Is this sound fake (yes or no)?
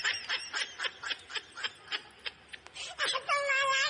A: no